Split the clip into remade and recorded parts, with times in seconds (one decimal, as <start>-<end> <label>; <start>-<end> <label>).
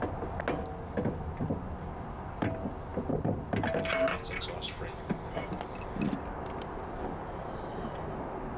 0.0-8.6 recorded